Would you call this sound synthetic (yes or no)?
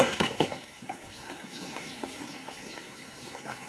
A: yes